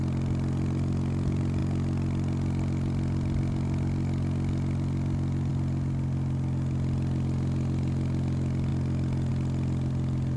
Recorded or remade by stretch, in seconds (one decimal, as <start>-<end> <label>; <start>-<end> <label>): 0.0-10.4 recorded